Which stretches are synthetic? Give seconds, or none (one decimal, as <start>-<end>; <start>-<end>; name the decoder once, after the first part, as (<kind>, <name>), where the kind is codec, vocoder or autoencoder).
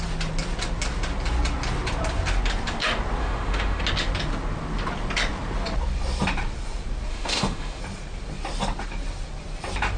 3.2-3.8 (autoencoder, DAC-VAE); 7.1-7.8